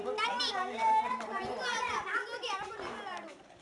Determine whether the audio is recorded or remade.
recorded